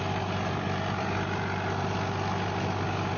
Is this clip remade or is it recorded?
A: recorded